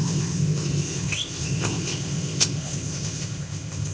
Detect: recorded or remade remade